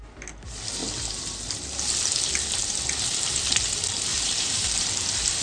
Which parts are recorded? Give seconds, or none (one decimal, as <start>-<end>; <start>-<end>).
0.0-4.1